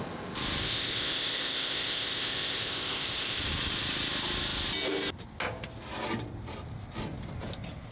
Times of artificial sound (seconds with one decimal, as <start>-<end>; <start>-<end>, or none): 0.6-3.4